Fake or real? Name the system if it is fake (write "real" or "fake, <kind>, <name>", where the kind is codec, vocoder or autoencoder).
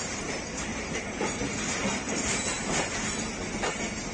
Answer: real